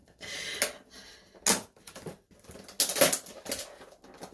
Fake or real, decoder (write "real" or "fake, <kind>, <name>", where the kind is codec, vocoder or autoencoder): real